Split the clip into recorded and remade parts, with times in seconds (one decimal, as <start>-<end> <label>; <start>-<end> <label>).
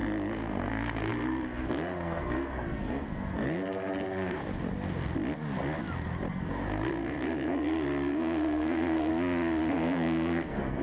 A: 0.0-4.4 remade; 4.4-6.3 recorded; 6.3-9.1 remade; 9.1-9.7 recorded; 9.7-10.8 remade